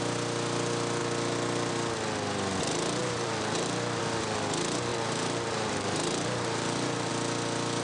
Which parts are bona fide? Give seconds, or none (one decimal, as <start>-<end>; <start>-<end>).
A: 0.0-3.0; 4.0-4.9; 7.1-7.8